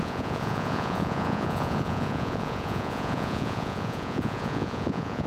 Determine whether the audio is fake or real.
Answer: fake